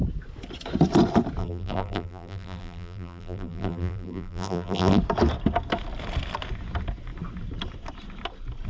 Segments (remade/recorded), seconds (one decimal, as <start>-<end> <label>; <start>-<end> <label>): 0.0-1.4 recorded; 1.4-5.0 remade; 5.0-8.7 recorded